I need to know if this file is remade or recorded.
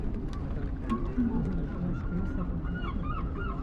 recorded